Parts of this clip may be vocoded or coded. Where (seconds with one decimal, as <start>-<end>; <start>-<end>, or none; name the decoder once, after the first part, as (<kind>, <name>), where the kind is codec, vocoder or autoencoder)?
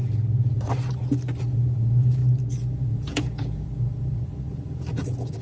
1.4-2.2 (vocoder, Vocos); 2.7-5.4